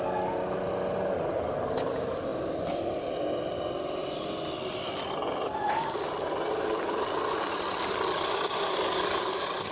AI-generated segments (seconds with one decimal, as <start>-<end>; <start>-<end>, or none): none